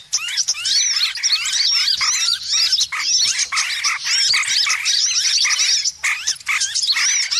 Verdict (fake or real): real